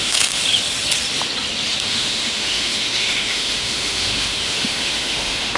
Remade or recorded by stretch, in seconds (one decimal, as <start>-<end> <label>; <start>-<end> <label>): 0.0-0.4 remade; 0.4-1.8 recorded; 1.8-5.6 remade